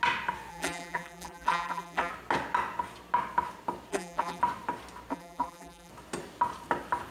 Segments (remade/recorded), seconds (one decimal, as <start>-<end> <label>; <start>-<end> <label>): 0.0-0.5 recorded; 0.5-2.1 remade; 2.1-3.9 recorded; 3.9-4.4 remade; 4.4-5.1 recorded; 5.1-5.9 remade; 5.9-7.1 recorded